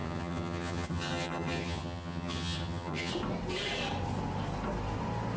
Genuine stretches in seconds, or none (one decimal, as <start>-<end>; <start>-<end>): 3.1-5.4